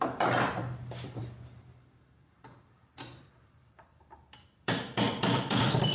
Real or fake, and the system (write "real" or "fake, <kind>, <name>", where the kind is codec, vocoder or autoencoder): fake, vocoder, BigVGAN v2